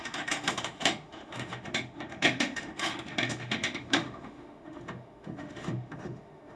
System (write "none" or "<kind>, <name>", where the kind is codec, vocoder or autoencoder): autoencoder, DAC-VAE